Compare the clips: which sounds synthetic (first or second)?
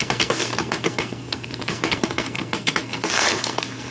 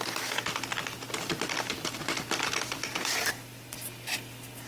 first